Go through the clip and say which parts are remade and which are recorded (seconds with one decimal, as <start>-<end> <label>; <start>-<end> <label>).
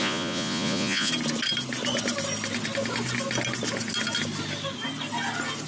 0.0-1.1 remade; 1.1-5.7 recorded